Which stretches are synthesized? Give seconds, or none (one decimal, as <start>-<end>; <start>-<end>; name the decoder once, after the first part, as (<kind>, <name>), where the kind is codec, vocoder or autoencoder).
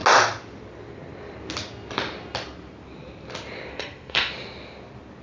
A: 3.7-4.3 (codec, SNAC)